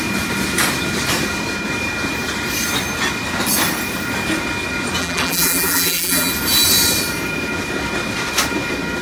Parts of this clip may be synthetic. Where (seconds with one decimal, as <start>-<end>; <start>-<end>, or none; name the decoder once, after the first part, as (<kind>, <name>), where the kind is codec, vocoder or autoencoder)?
5.0-6.3 (vocoder, BigVGAN v2)